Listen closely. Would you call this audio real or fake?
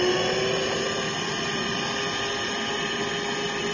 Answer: real